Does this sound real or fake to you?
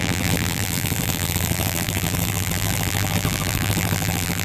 fake